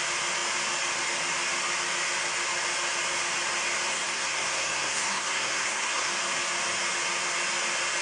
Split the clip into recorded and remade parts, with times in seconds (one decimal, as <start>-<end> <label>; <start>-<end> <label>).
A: 0.0-3.9 recorded; 3.9-6.1 remade; 6.1-8.0 recorded